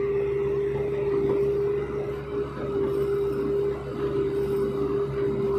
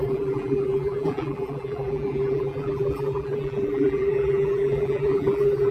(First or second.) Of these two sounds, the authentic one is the first